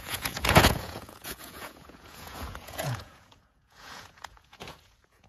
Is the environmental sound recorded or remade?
remade